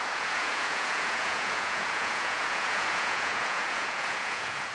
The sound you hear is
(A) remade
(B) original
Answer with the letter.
A